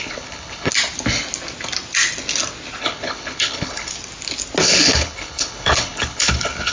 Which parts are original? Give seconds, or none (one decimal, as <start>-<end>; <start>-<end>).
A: 0.7-2.8; 3.9-4.6